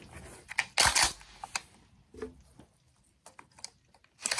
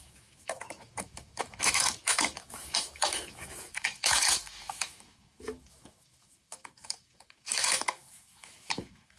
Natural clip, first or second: first